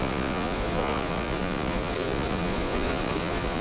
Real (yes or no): no